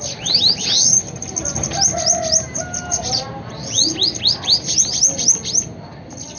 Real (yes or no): yes